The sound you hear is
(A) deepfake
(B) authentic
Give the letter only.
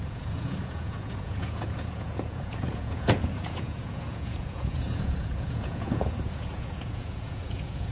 A